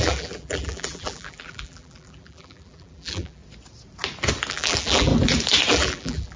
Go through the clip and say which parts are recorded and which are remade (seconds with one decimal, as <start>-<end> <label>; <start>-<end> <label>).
0.0-3.4 remade; 3.4-4.5 recorded; 4.5-5.1 remade; 5.1-5.7 recorded; 5.7-6.4 remade